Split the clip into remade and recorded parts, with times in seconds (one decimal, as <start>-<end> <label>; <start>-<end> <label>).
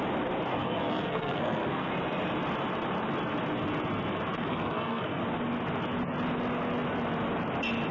0.0-0.5 recorded; 0.5-1.9 remade; 1.9-4.4 recorded; 4.4-5.2 remade; 5.2-7.9 recorded